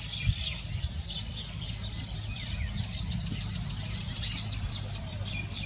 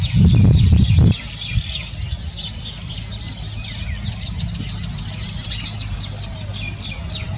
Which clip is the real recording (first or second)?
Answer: second